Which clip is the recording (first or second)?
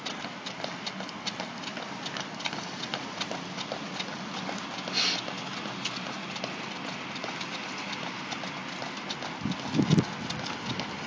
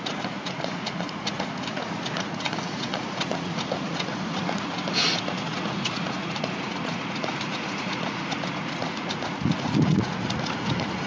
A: first